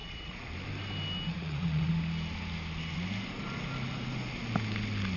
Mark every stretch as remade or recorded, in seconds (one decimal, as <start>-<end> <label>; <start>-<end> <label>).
0.0-0.5 remade; 0.5-1.3 recorded; 1.3-1.9 remade; 1.9-5.2 recorded